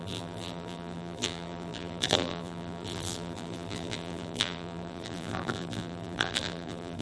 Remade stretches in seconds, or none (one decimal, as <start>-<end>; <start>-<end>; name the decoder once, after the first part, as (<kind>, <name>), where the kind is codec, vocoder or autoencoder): 0.0-7.0 (vocoder, BigVGAN v2)